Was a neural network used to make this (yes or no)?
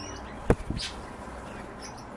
no